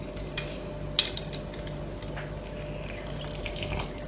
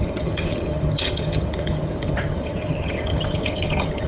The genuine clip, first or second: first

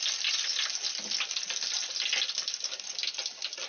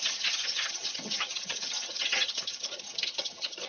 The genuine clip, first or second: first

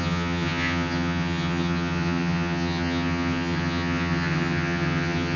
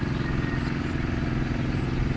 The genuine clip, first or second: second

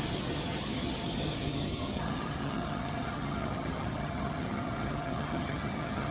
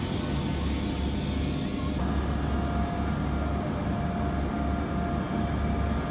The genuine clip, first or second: second